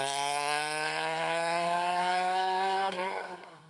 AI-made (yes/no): yes